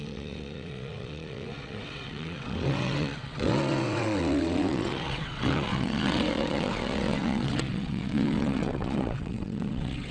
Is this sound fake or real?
fake